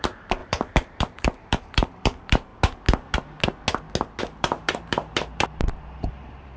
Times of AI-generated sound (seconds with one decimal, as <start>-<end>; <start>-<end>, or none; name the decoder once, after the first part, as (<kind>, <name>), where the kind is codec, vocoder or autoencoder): 0.0-2.5 (vocoder, BigVGAN v2); 4.2-6.6

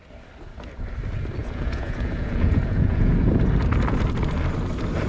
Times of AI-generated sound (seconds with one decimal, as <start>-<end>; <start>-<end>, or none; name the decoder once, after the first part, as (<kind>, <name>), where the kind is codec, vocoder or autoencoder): 1.4-3.4 (vocoder, Vocos)

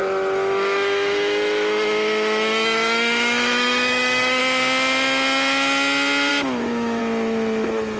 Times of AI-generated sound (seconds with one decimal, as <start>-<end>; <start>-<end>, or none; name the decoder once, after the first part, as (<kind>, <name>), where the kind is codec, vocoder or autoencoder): 0.0-4.4 (autoencoder, DAC-VAE); 6.3-7.0

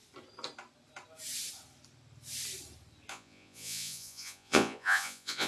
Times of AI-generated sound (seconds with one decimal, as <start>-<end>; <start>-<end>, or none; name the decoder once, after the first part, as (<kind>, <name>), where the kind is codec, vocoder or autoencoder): 3.1-5.5 (vocoder, Vocos)

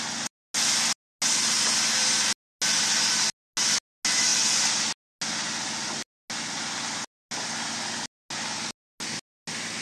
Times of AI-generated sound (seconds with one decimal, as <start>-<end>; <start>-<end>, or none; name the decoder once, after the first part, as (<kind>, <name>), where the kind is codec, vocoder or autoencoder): none

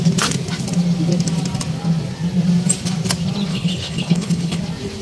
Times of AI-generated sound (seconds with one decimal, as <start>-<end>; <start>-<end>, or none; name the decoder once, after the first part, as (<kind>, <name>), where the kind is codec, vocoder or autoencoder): 3.5-4.6 (codec, HILCodec)

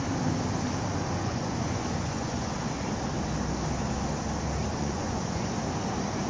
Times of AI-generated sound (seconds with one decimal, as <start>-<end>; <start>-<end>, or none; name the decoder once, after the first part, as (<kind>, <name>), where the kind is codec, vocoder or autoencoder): 1.2-2.5 (vocoder, Vocos); 4.7-5.6

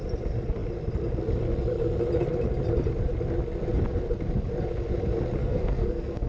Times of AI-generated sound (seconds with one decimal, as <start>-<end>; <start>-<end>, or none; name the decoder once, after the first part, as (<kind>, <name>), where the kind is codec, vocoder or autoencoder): 5.4-6.3 (codec, SNAC)